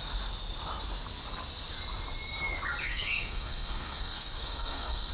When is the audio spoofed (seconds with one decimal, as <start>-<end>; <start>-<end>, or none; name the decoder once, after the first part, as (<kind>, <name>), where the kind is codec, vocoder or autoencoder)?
2.8-5.1 (codec, SNAC)

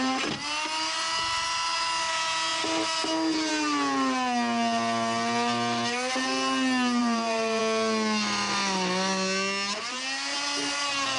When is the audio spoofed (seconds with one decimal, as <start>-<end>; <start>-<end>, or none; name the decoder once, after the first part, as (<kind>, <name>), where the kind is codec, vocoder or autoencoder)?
7.0-7.6 (vocoder, BigVGAN v2)

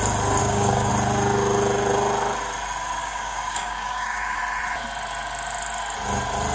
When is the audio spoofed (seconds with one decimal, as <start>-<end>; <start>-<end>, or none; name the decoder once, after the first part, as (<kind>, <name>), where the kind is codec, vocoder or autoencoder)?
0.4-0.9 (codec, DAC); 3.0-4.4

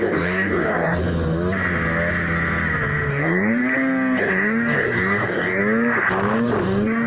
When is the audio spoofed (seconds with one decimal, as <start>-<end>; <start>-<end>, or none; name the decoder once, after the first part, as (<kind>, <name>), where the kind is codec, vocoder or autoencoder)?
0.0-1.0 (codec, DAC); 3.1-3.6; 4.2-5.6; 6.6-7.1

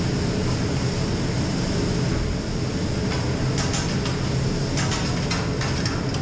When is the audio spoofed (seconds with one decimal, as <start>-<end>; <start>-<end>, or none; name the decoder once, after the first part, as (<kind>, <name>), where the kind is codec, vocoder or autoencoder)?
none

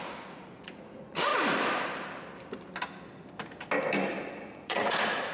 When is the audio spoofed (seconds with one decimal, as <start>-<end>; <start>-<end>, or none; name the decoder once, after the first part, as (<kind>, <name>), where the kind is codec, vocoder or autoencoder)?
0.0-1.3 (vocoder, Vocos); 4.5-5.3

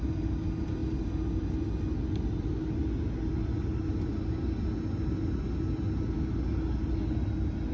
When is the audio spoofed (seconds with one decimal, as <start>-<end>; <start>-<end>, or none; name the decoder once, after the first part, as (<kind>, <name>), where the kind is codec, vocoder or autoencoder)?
none

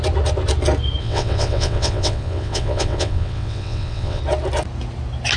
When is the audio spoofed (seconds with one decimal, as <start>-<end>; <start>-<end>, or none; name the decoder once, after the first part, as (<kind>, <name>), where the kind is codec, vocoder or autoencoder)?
1.0-4.2 (vocoder, WaveNeXt)